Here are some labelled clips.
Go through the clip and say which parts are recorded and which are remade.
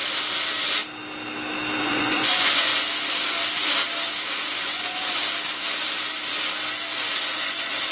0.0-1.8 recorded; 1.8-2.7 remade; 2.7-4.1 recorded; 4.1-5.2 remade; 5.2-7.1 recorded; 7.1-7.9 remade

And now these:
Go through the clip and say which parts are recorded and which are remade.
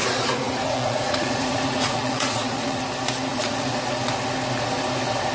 0.0-2.8 remade; 2.8-3.3 recorded; 3.3-3.9 remade; 3.9-5.3 recorded